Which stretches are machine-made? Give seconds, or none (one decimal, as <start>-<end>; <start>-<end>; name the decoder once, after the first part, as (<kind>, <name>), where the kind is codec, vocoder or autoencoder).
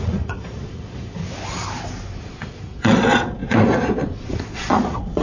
0.0-1.2 (vocoder, Vocos); 2.2-5.2